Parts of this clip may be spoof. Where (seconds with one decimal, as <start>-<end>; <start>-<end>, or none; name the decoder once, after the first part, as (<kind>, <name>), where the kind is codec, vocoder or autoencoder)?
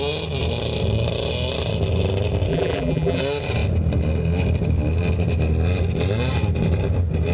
2.5-3.2 (vocoder, BigVGAN v2)